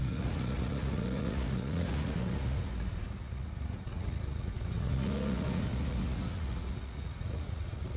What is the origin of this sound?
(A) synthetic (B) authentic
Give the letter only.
A